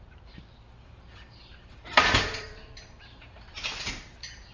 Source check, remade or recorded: remade